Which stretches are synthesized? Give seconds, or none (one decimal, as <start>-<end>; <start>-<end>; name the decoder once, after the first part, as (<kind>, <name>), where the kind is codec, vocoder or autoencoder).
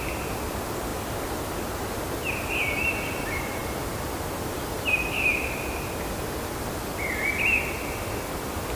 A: none